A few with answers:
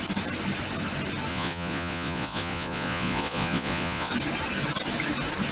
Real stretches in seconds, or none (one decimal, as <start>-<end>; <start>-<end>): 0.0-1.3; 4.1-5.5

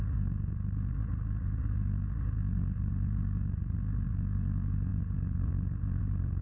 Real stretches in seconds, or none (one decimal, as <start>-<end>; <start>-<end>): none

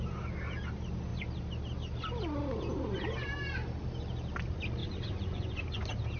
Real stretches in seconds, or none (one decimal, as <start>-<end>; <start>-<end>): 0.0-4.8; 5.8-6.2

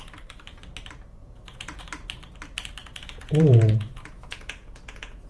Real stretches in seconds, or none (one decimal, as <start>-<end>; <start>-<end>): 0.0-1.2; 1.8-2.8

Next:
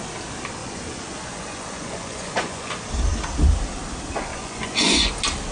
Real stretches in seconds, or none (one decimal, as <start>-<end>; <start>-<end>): 0.0-0.6; 2.7-4.3; 5.1-5.5

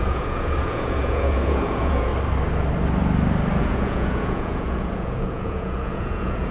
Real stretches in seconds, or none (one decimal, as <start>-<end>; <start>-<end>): 2.1-3.6

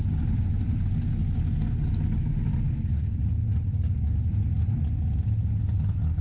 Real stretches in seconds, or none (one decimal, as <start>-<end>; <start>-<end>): 0.0-6.2